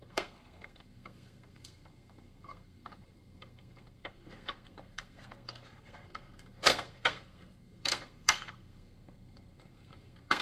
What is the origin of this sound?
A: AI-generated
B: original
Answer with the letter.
A